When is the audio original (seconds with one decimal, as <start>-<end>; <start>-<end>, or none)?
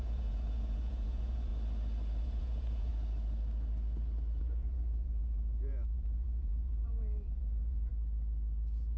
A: 1.5-2.2; 2.9-4.4; 7.9-9.0